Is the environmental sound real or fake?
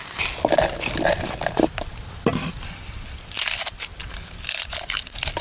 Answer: real